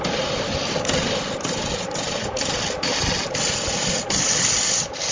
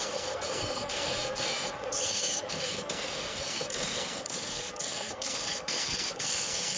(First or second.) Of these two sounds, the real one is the first